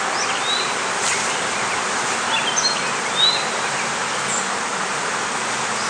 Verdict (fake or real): real